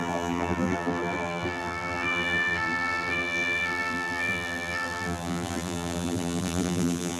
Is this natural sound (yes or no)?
no